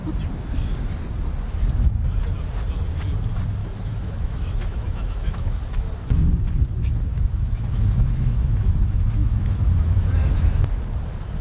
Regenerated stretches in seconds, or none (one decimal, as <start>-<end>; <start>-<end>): 3.6-5.4; 7.1-10.6